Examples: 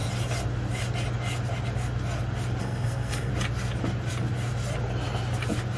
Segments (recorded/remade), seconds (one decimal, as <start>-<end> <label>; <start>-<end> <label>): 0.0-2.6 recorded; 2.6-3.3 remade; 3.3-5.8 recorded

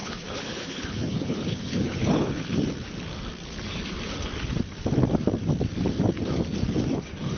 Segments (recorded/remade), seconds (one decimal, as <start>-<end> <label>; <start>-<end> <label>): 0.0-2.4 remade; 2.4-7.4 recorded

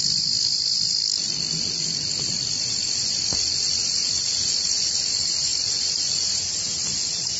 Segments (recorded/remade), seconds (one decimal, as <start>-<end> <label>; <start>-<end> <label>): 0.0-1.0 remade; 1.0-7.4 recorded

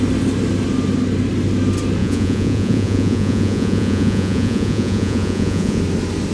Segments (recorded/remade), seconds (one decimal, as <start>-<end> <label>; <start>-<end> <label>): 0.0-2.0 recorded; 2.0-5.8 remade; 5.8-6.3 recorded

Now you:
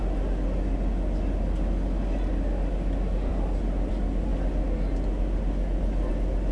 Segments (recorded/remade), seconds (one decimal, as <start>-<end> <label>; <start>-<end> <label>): 0.0-6.5 recorded

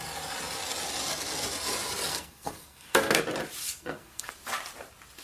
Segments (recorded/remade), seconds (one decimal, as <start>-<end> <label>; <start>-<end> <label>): 0.0-2.1 recorded; 2.1-3.2 remade; 3.2-3.6 recorded; 3.6-4.3 remade; 4.3-5.2 recorded

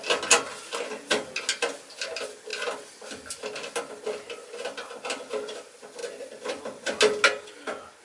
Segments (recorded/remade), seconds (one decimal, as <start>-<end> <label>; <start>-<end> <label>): 0.0-8.0 recorded

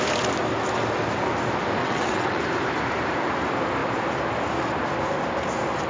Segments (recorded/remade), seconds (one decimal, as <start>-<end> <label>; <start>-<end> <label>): 0.0-1.8 recorded; 1.8-2.4 remade; 2.4-5.9 recorded